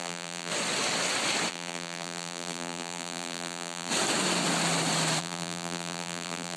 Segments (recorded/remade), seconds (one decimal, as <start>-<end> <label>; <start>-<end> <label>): 0.0-0.5 remade; 0.5-1.5 recorded; 1.5-3.9 remade; 3.9-5.2 recorded; 5.2-6.6 remade